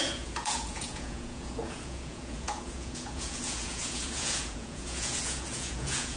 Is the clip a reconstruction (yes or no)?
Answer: yes